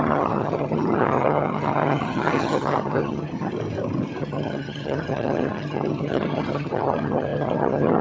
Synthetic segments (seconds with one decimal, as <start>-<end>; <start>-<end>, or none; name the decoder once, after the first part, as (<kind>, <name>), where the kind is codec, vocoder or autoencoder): 0.0-3.5 (vocoder, HiFi-GAN); 4.2-8.0